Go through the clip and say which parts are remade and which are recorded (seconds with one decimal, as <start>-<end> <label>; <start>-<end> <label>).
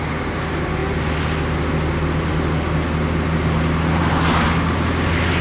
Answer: 0.0-5.4 recorded